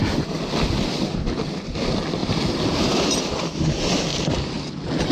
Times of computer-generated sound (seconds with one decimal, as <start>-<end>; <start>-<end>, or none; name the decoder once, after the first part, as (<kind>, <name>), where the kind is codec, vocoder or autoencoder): 2.2-3.1 (vocoder, BigVGAN v2)